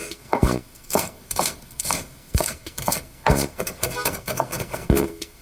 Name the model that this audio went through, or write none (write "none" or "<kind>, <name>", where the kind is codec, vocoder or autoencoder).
codec, SNAC